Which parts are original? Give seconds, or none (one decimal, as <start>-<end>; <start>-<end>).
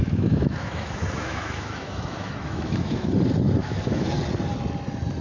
3.1-3.6; 4.1-5.2